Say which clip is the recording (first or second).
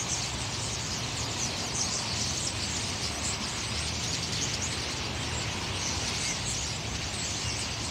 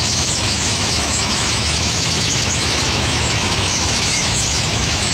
first